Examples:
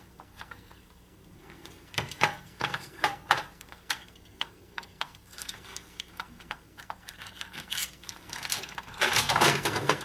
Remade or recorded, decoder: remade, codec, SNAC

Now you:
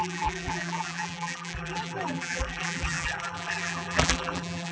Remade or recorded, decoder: remade, vocoder, BigVGAN v2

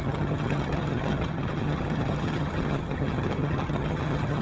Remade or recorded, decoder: remade, vocoder, HiFi-GAN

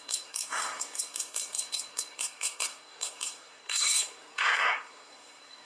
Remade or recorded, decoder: remade, codec, SNAC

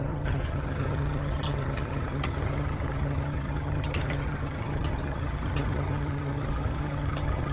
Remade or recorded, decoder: remade, vocoder, HiFi-GAN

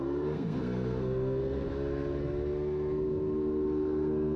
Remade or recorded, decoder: remade, codec, SNAC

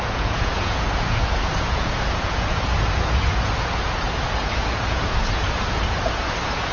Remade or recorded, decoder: remade, vocoder, Vocos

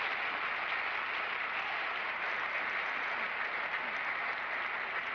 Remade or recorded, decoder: recorded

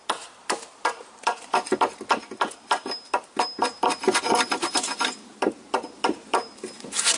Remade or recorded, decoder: recorded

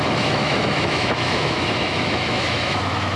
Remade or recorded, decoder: remade, autoencoder, DAC-VAE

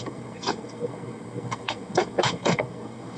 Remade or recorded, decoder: remade, codec, SNAC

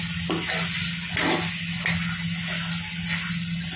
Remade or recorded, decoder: recorded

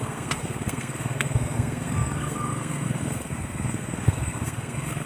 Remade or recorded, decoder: remade, codec, SNAC